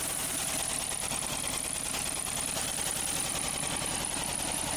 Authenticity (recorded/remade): recorded